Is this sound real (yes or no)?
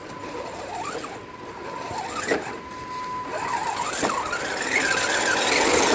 yes